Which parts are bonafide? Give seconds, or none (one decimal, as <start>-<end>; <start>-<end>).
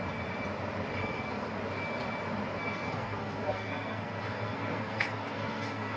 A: 0.0-1.0; 1.5-2.6